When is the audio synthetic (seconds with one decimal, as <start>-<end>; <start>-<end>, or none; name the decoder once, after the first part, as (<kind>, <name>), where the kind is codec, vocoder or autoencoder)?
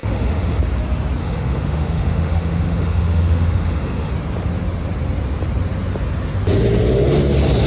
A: 0.0-0.6 (autoencoder, DAC-VAE); 1.2-4.1